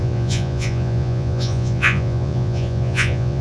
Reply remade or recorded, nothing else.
remade